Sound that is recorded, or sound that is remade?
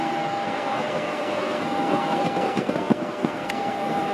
remade